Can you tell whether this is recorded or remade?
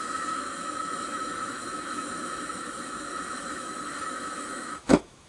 remade